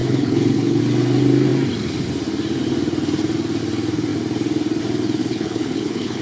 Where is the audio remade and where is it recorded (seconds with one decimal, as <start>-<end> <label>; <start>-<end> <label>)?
0.0-0.8 remade; 0.8-5.2 recorded; 5.2-6.2 remade